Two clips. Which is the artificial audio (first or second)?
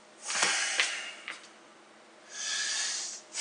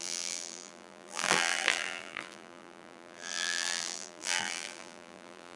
second